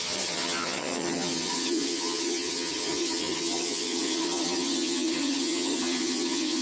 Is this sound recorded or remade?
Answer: remade